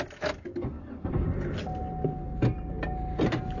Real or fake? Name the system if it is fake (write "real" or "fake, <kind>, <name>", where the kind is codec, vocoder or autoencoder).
real